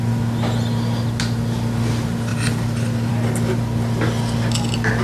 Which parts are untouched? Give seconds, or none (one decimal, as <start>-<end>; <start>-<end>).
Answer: 0.0-5.0